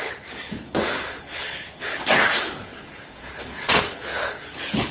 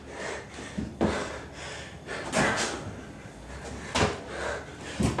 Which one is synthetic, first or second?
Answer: first